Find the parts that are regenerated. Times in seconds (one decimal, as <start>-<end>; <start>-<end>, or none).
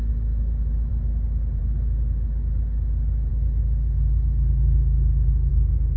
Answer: 3.3-5.5